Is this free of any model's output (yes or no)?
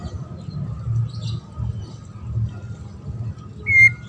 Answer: yes